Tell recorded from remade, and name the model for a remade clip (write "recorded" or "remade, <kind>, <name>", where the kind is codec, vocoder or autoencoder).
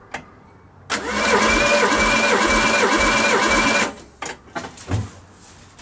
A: recorded